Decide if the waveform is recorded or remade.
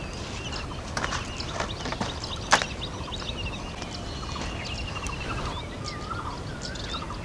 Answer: recorded